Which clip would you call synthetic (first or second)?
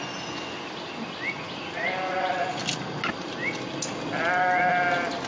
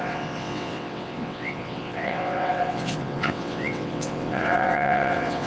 second